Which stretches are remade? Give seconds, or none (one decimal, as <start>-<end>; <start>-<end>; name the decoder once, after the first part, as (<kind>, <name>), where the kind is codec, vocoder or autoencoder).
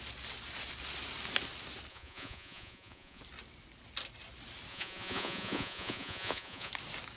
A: 1.9-3.2 (vocoder, Vocos); 4.7-6.7